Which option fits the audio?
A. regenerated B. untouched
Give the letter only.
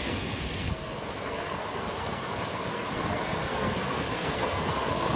A